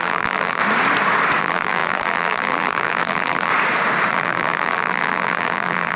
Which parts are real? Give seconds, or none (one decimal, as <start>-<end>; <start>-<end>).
0.6-1.4; 3.5-4.1